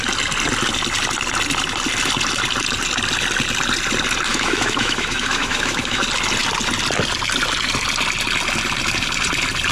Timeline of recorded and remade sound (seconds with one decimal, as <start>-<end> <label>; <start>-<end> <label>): 0.0-4.3 recorded; 4.3-6.0 remade; 6.0-9.7 recorded